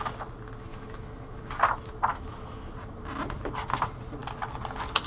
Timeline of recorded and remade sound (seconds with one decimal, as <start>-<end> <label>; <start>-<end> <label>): 0.0-0.7 recorded; 0.7-1.5 remade; 1.5-2.1 recorded; 2.1-2.7 remade; 2.7-5.1 recorded